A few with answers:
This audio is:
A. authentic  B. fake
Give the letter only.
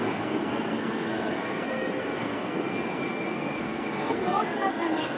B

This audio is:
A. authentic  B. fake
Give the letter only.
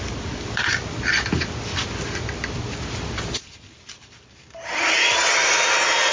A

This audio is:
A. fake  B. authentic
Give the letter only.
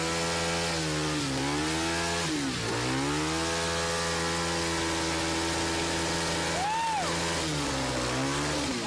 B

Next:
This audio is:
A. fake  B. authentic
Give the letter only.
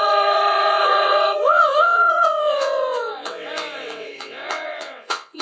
A